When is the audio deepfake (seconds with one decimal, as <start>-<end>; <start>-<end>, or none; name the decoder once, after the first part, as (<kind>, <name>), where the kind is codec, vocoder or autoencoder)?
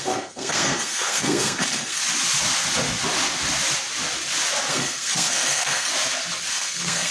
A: 0.0-2.0 (codec, SNAC); 4.7-5.9; 6.5-7.1